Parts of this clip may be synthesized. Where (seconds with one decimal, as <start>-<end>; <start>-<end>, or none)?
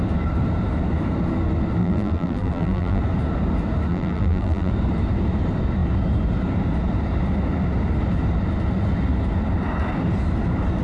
1.8-3.0; 3.9-4.7